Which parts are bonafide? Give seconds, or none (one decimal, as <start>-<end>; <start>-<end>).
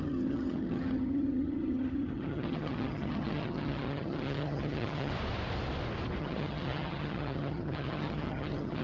5.1-6.2